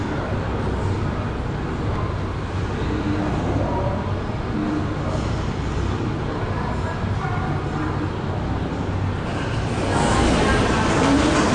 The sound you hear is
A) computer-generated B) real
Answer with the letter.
B